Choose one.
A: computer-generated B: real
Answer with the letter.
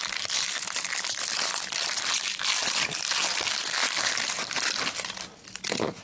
B